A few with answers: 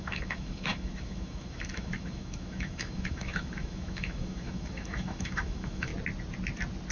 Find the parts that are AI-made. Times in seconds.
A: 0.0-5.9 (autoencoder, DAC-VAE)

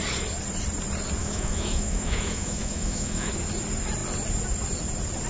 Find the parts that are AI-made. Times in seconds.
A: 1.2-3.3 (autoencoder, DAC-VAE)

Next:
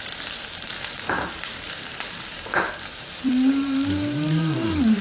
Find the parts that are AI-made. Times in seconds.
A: 0.0-5.0 (vocoder, BigVGAN v2)

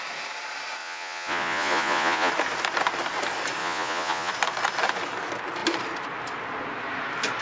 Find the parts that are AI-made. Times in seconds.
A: 0.8-2.3 (vocoder, Vocos); 3.6-4.3

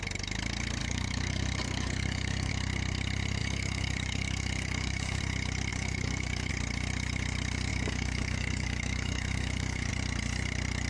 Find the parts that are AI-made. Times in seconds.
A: 0.8-2.5 (codec, DAC); 3.4-5.2; 5.7-6.5; 7.7-9.9

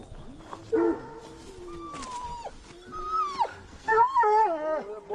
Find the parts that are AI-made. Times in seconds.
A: 3.5-4.1 (codec, SNAC)